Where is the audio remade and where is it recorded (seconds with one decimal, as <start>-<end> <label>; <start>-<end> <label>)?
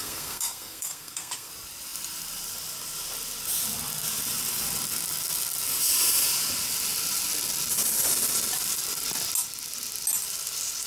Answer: 0.0-1.5 remade; 1.5-10.9 recorded